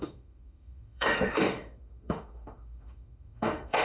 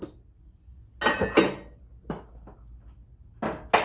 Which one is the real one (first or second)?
second